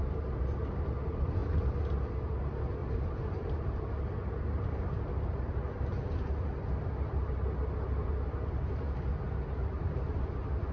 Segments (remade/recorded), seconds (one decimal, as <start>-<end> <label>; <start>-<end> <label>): 0.0-0.7 remade; 0.7-2.8 recorded; 2.8-5.7 remade; 5.7-10.7 recorded